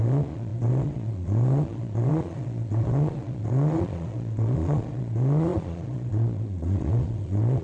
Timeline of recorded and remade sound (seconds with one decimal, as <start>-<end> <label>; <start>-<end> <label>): 0.0-7.6 remade